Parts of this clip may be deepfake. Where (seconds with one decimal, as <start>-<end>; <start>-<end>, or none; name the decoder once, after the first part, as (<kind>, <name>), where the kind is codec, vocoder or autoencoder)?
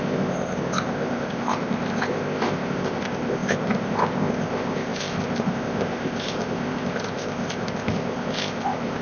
0.0-9.0 (codec, ZipCodec)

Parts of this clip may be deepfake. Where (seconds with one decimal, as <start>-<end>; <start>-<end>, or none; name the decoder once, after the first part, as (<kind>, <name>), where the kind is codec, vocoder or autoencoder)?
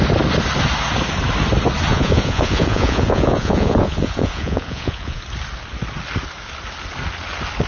1.9-5.2 (vocoder, Vocos)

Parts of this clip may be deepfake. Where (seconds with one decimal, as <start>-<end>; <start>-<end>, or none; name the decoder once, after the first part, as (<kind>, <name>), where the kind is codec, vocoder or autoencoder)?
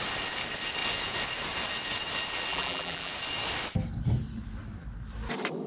2.5-3.1 (vocoder, BigVGAN v2)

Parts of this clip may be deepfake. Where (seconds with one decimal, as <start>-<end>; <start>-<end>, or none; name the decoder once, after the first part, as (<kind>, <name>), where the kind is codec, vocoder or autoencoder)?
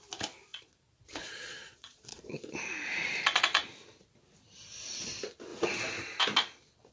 0.5-2.5 (vocoder, Vocos)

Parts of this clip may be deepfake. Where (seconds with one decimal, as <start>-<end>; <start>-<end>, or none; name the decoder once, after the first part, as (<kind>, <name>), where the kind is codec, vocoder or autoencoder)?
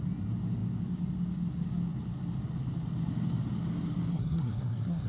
4.1-5.1 (codec, SNAC)